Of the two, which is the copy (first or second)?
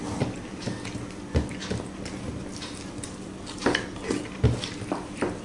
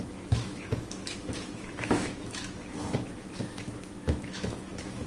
second